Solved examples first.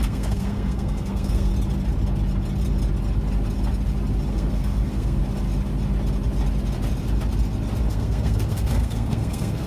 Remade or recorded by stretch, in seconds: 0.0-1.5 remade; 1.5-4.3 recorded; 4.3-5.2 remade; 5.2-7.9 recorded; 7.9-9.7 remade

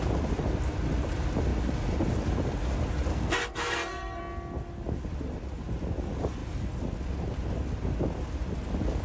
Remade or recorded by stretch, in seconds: 0.0-3.1 recorded; 3.1-4.2 remade; 4.2-9.0 recorded

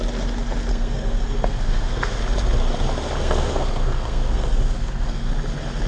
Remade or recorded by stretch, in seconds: 0.0-0.7 recorded; 0.7-2.2 remade; 2.2-3.2 recorded; 3.2-5.3 remade; 5.3-5.9 recorded